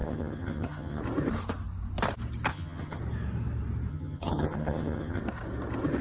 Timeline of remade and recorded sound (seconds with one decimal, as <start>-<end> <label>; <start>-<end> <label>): 0.0-1.0 remade; 1.0-2.5 recorded; 2.5-3.0 remade; 3.0-3.9 recorded; 3.9-5.2 remade; 5.2-6.0 recorded